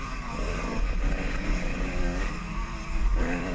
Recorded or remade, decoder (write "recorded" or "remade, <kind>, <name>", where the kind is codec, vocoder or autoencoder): remade, codec, DAC